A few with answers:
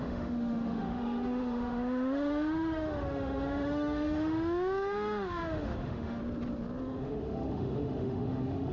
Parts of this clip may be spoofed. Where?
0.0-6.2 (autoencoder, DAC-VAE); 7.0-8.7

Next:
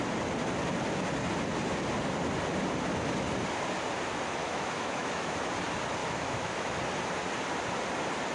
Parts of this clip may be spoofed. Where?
4.4-5.4 (autoencoder, DAC-VAE); 6.0-6.8

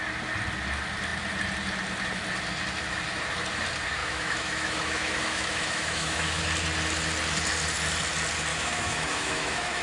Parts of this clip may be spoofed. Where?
4.0-6.4 (autoencoder, DAC-VAE); 8.5-9.8

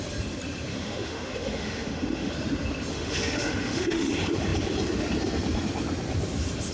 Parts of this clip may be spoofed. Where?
0.7-2.3 (autoencoder, DAC-VAE); 2.9-4.1